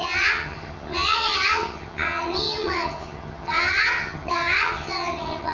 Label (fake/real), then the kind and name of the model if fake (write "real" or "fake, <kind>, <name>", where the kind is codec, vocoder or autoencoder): fake, vocoder, HiFi-GAN